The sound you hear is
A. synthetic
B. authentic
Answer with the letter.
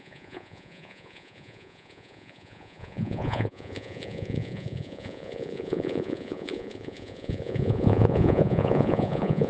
A